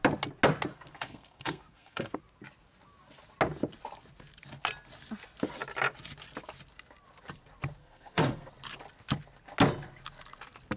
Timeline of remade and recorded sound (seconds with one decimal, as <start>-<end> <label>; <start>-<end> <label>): 0.0-0.7 recorded; 0.7-2.2 remade; 2.2-7.8 recorded; 7.8-8.5 remade; 8.5-10.8 recorded